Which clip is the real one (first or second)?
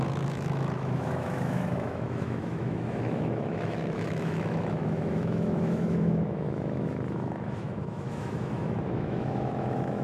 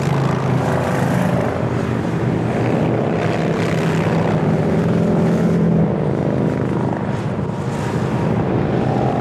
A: second